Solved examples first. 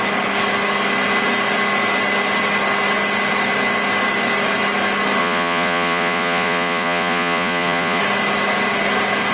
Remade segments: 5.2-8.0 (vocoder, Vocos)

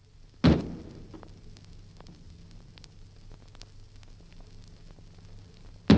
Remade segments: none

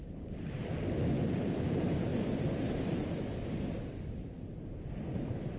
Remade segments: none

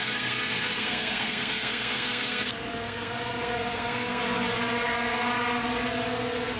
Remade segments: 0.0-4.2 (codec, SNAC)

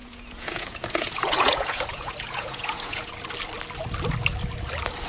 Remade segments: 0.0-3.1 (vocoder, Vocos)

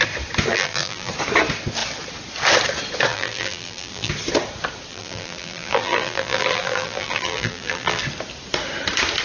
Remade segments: 0.5-1.1 (vocoder, BigVGAN v2); 3.1-4.1; 4.9-8.0

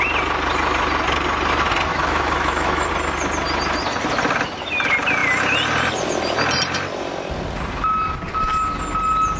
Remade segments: 1.9-2.9 (autoencoder, DAC-VAE)

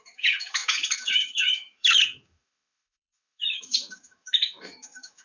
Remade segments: 0.0-5.2 (autoencoder, DAC-VAE)